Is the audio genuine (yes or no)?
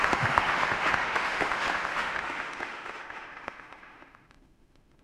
no